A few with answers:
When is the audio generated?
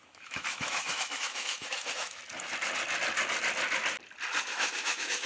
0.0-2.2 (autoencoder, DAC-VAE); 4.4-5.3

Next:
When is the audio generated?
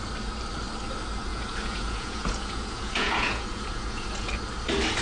1.3-4.3 (vocoder, Vocos)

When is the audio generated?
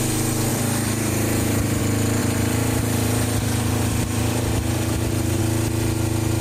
0.5-1.8 (vocoder, BigVGAN v2); 2.2-5.4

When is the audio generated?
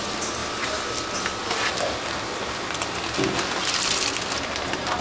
none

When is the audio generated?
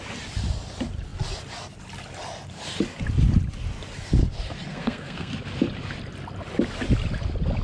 4.7-5.3 (codec, SNAC)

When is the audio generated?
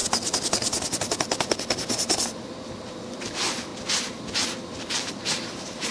2.9-3.7 (vocoder, BigVGAN v2); 5.2-5.9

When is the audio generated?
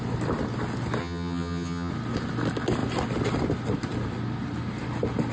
1.0-1.9 (vocoder, HiFi-GAN)